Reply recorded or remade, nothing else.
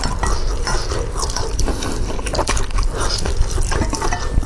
remade